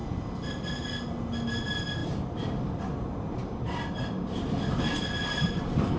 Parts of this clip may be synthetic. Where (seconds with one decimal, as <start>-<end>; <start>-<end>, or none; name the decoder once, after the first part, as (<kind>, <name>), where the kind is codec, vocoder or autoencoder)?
none